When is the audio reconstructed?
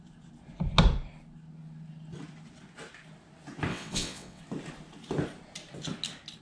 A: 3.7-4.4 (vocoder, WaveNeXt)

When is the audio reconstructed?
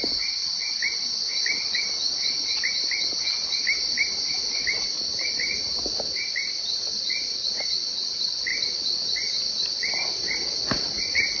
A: 0.4-1.6 (vocoder, BigVGAN v2); 4.4-8.0; 8.5-11.4